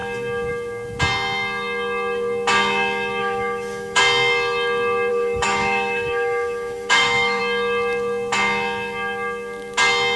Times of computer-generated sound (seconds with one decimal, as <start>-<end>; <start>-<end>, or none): 3.2-4.0; 5.1-7.4